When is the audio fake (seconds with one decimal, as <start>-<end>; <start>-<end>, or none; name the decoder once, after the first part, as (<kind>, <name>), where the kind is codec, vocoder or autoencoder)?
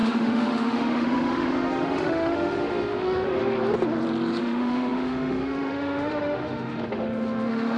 0.0-3.4 (autoencoder, DAC-VAE); 4.4-7.8